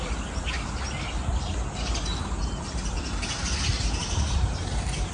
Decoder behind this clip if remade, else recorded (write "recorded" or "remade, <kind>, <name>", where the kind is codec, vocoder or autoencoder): recorded